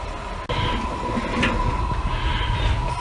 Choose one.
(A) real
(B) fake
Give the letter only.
A